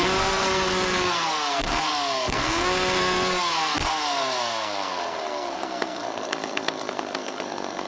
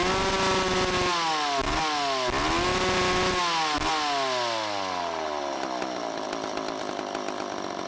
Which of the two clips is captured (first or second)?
second